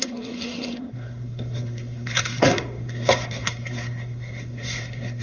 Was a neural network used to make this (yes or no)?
yes